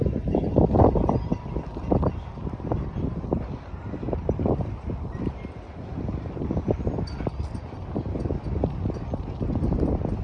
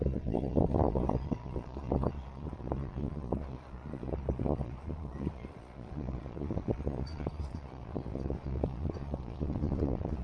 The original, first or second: first